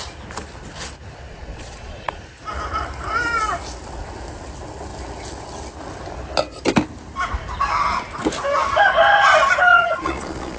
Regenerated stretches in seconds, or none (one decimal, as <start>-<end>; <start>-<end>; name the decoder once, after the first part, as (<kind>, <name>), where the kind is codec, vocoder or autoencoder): 1.3-2.2 (vocoder, Vocos); 9.7-10.6